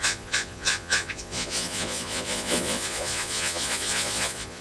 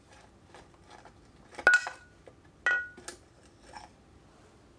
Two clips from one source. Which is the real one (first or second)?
second